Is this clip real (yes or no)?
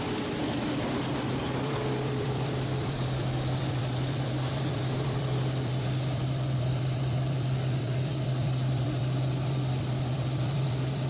no